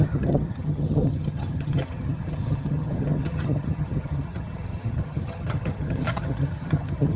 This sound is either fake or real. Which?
fake